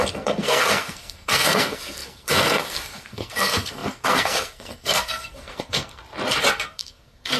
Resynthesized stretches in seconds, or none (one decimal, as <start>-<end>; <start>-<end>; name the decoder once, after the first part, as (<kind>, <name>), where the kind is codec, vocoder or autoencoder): 0.0-6.0 (codec, SNAC); 6.5-7.4